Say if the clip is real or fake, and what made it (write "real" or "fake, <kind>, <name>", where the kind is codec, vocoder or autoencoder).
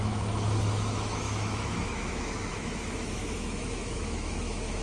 fake, autoencoder, DAC-VAE